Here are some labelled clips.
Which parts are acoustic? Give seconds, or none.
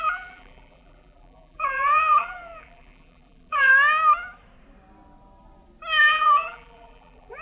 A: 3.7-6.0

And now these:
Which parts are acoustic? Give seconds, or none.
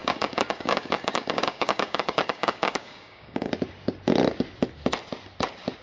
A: 3.5-5.8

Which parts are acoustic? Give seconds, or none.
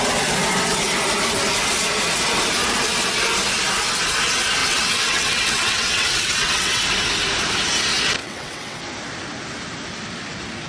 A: 0.0-4.6; 6.8-8.2; 8.8-10.7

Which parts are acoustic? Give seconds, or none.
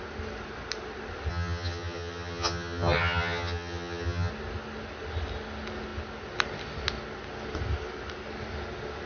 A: 0.0-1.3; 4.3-9.1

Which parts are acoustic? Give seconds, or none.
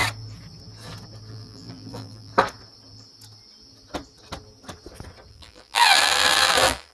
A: 0.0-1.3; 2.3-5.3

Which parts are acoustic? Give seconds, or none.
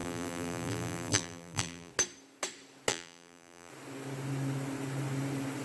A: 1.9-2.9; 3.7-5.6